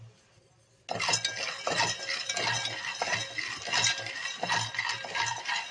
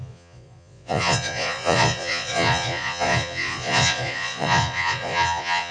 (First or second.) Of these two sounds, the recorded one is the first